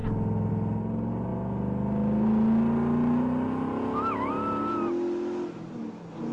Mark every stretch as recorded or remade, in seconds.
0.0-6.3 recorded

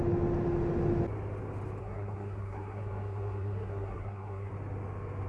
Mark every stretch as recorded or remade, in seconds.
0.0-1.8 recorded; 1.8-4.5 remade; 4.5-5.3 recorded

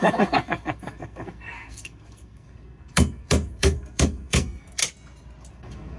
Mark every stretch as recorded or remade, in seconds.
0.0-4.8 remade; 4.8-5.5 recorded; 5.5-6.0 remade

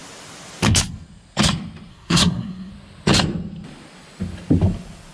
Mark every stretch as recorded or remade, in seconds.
0.0-1.9 recorded; 1.9-2.7 remade; 2.7-5.1 recorded